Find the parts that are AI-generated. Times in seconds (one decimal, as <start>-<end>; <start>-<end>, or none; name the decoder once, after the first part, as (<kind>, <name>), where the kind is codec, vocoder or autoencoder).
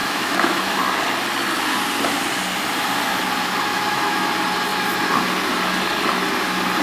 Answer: 0.0-0.8 (autoencoder, DAC-VAE); 3.7-4.3